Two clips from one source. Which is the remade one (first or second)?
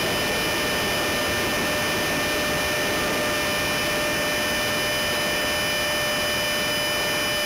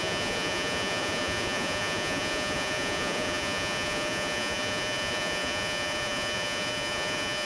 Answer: second